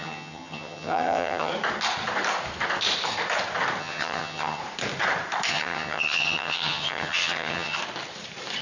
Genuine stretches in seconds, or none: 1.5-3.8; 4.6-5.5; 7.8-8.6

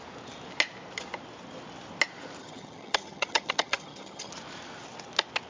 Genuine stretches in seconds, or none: 0.0-2.4; 4.3-5.5

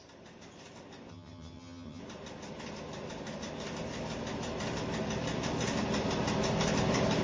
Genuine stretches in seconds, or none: 0.0-1.1; 2.0-7.2

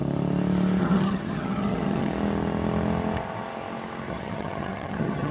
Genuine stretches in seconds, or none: 0.0-0.8; 2.1-4.1